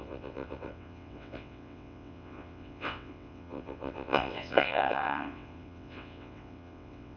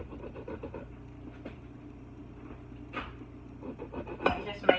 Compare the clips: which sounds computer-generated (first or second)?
first